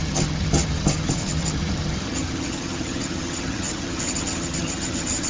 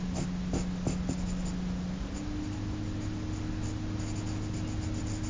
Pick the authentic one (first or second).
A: second